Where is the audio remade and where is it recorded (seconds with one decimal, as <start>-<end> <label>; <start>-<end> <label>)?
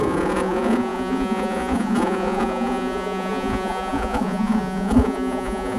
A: 0.0-5.8 remade